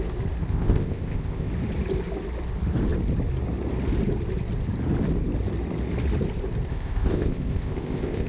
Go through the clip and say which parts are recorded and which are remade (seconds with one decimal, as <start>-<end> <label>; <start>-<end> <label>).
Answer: 0.0-0.5 recorded; 0.5-1.5 remade; 1.5-6.7 recorded; 6.7-8.3 remade

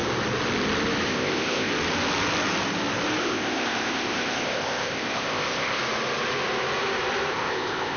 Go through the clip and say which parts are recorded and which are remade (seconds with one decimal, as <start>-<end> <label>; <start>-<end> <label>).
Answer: 0.0-1.1 recorded; 1.1-1.7 remade; 1.7-3.2 recorded; 3.2-5.8 remade; 5.8-7.3 recorded; 7.3-8.0 remade

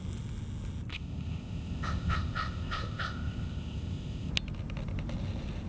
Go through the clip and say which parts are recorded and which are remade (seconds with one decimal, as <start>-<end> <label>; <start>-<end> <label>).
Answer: 0.0-0.9 recorded; 0.9-4.3 remade; 4.3-5.7 recorded

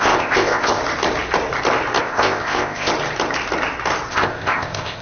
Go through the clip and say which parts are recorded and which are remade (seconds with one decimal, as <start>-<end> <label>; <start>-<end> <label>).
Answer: 0.0-0.8 remade; 0.8-2.0 recorded; 2.0-2.9 remade; 2.9-4.1 recorded; 4.1-5.0 remade

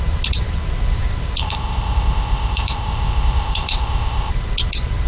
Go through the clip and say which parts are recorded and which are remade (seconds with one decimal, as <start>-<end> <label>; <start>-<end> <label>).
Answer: 0.0-1.4 recorded; 1.4-4.3 remade; 4.3-5.1 recorded

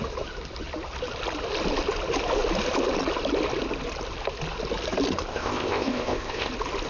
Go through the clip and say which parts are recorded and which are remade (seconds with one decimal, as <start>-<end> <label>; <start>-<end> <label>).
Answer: 0.0-5.3 recorded; 5.3-6.5 remade; 6.5-6.9 recorded

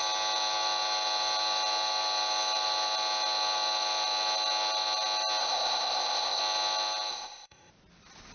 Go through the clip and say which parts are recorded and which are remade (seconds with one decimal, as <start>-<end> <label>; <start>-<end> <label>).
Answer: 0.0-5.4 recorded; 5.4-6.4 remade; 6.4-7.1 recorded; 7.1-7.7 remade; 7.7-8.3 recorded

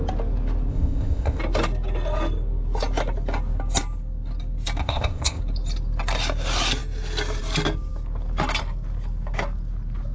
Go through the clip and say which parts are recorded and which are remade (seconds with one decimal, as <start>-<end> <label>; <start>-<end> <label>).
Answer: 0.0-0.7 recorded; 0.7-1.4 remade; 1.4-4.8 recorded; 4.8-5.4 remade; 5.4-10.1 recorded